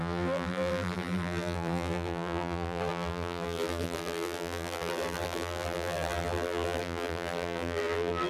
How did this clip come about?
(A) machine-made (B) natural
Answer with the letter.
A